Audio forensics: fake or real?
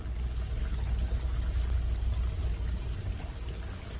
real